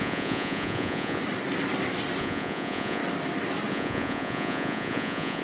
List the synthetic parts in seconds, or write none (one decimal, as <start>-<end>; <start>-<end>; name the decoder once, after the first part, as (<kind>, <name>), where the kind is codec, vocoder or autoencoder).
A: 0.0-1.2 (vocoder, Vocos); 2.2-3.0; 3.7-5.4